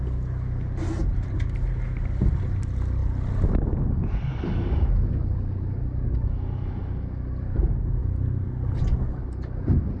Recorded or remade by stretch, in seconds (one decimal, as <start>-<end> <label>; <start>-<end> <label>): 0.0-10.0 recorded